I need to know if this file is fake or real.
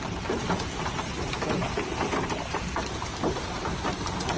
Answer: real